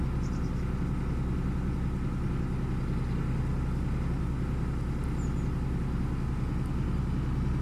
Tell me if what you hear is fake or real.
real